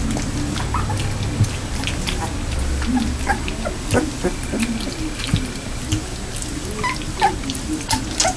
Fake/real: real